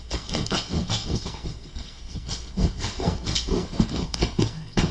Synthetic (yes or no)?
yes